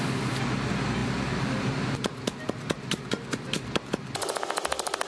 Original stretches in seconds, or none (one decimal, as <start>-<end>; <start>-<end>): 0.0-5.1